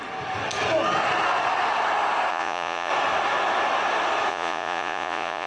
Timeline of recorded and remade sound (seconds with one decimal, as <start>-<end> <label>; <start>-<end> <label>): 0.0-2.3 recorded; 2.3-2.9 remade; 2.9-4.3 recorded; 4.3-5.5 remade